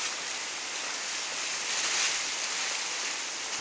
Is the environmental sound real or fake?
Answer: real